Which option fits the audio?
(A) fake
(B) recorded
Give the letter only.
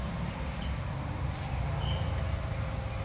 B